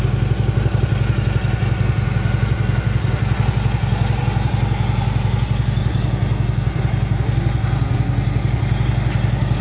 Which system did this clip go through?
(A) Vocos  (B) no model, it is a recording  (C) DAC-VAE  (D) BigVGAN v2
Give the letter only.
B